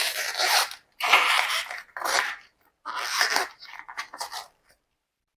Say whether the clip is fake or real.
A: fake